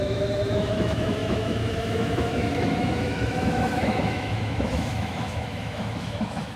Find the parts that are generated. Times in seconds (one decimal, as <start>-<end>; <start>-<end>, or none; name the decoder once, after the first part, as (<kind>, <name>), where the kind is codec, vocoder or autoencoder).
0.0-6.6 (autoencoder, DAC-VAE)